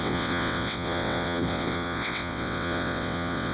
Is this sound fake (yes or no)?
yes